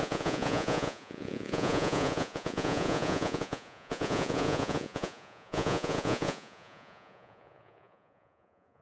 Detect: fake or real fake